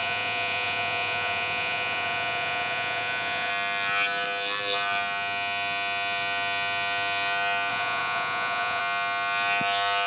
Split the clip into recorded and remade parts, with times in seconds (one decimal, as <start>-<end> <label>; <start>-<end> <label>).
0.0-3.5 remade; 3.5-7.7 recorded; 7.7-8.8 remade; 8.8-10.1 recorded